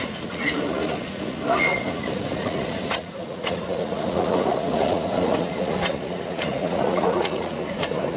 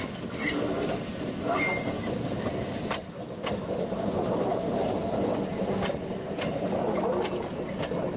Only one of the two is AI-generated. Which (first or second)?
first